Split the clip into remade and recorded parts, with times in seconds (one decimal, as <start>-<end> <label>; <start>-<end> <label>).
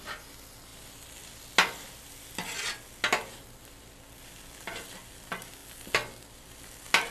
0.0-7.1 recorded